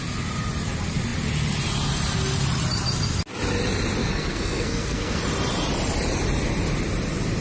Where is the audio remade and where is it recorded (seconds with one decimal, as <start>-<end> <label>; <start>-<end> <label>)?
0.0-4.0 recorded; 4.0-5.2 remade; 5.2-7.4 recorded